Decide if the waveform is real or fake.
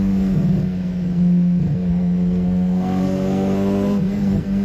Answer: fake